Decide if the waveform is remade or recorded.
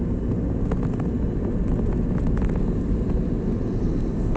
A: recorded